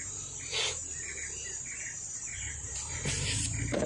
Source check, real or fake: real